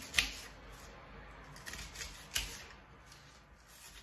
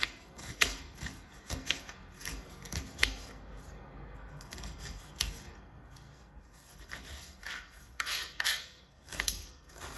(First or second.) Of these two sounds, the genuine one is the first